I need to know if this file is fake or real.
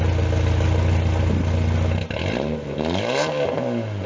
real